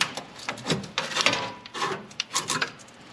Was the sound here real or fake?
fake